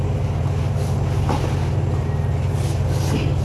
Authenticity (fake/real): real